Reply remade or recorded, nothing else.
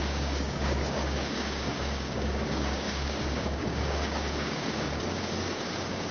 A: remade